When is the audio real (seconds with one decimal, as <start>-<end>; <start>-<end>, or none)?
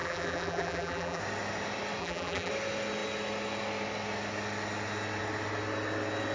1.2-2.0; 2.5-6.3